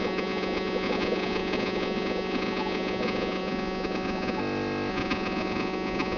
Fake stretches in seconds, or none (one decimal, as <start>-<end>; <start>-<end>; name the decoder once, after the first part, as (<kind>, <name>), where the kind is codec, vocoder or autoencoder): 0.0-4.4 (vocoder, Vocos); 4.9-6.2